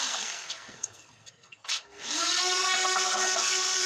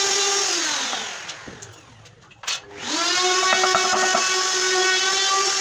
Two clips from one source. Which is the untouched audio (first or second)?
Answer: second